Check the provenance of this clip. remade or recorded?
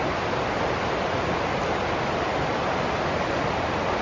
recorded